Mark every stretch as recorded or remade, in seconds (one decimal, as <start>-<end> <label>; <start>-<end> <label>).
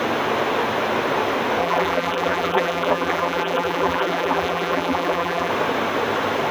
0.0-1.6 recorded; 1.6-5.5 remade; 5.5-6.5 recorded